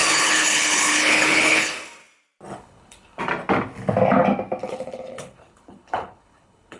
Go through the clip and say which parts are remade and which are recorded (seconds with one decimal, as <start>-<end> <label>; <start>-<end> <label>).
0.0-1.7 remade; 1.7-2.5 recorded; 2.5-3.2 remade; 3.2-4.6 recorded; 4.6-6.8 remade